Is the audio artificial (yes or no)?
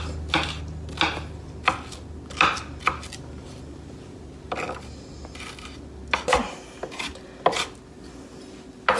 no